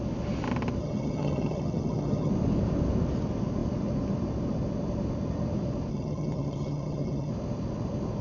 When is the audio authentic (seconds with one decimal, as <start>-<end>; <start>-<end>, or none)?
0.0-0.8; 2.3-5.9; 7.3-8.2